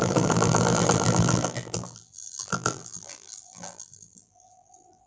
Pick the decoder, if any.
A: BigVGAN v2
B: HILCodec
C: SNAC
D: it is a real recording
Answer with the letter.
A